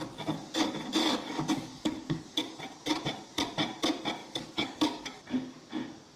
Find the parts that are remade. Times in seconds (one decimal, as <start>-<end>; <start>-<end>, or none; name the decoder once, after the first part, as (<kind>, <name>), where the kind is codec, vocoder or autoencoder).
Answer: 1.0-2.6 (codec, DAC); 4.2-5.2